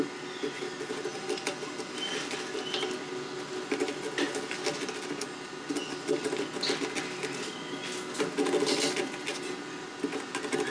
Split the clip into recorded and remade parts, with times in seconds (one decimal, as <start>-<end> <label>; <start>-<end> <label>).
0.0-1.1 recorded; 1.1-2.5 remade; 2.5-5.7 recorded; 5.7-6.3 remade; 6.3-10.7 recorded